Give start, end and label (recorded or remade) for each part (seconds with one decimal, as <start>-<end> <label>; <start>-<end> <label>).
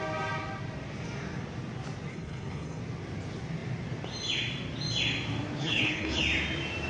0.0-2.1 recorded; 2.1-2.8 remade; 2.8-5.6 recorded; 5.6-6.2 remade; 6.2-6.9 recorded